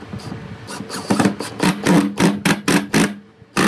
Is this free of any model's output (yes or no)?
yes